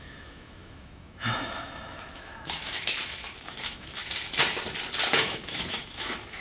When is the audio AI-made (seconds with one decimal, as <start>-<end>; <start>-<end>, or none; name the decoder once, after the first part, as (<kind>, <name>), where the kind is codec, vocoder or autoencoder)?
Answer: 0.0-4.0 (autoencoder, DAC-VAE); 5.1-6.4